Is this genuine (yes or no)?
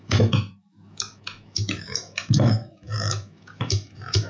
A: no